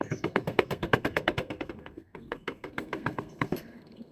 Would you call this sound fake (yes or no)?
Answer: yes